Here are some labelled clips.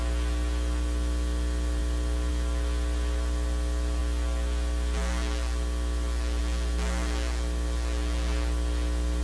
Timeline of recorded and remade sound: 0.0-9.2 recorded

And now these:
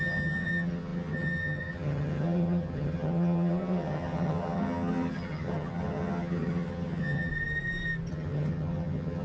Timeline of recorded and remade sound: 0.0-7.3 remade; 7.3-8.1 recorded; 8.1-9.2 remade

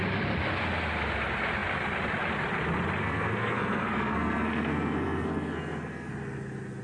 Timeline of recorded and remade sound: 0.0-3.0 recorded; 3.0-6.1 remade; 6.1-6.8 recorded

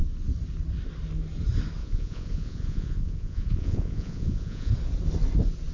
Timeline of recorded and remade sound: 0.0-1.8 recorded; 1.8-4.7 remade; 4.7-5.7 recorded

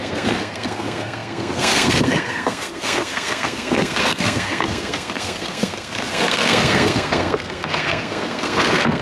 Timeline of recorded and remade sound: 0.0-9.0 remade